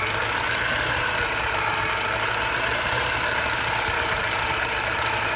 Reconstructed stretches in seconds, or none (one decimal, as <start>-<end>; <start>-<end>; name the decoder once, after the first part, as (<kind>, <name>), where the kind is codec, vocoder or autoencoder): 0.7-1.2 (vocoder, BigVGAN v2); 2.7-5.4